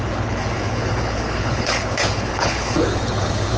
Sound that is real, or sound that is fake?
fake